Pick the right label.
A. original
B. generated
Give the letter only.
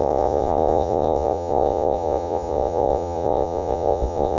B